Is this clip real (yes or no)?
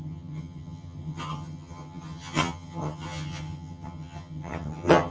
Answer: no